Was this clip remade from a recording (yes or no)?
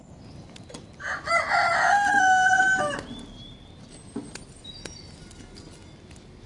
no